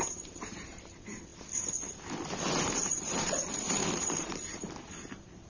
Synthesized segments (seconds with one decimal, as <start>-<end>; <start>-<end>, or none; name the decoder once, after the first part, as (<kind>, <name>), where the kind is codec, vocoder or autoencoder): 0.0-1.3 (vocoder, BigVGAN v2); 2.5-5.5